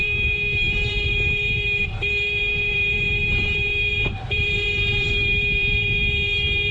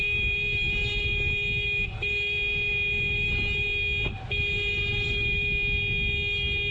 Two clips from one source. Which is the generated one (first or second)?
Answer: first